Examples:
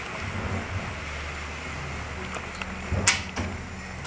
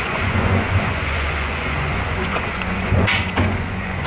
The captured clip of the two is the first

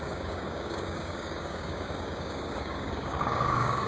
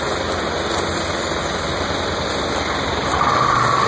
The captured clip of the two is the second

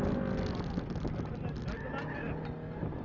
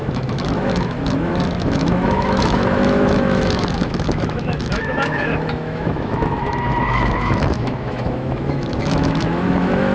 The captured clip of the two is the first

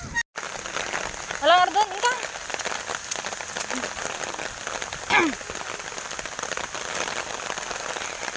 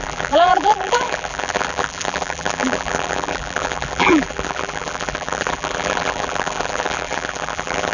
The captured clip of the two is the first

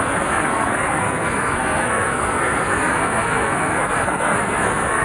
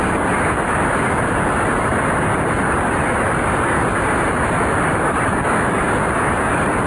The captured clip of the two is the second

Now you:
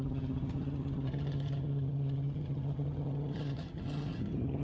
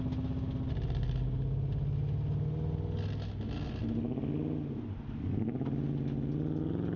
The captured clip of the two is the second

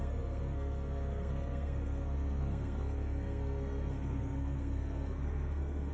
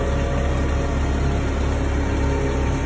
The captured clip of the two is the second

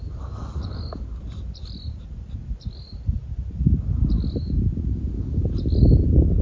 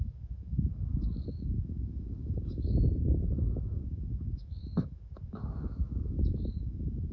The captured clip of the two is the first